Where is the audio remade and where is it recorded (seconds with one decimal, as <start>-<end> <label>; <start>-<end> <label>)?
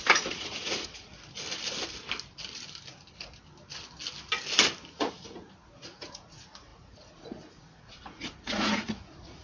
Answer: 0.0-1.1 remade; 1.1-4.9 recorded; 4.9-9.4 remade